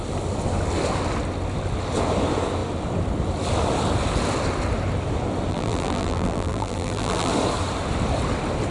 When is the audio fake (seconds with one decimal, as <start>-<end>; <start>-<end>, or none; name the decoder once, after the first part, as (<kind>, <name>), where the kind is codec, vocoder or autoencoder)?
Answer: 5.5-7.3 (vocoder, BigVGAN v2)